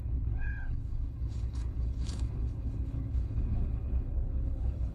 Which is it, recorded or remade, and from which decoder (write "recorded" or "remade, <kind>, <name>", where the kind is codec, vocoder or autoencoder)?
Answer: remade, codec, HILCodec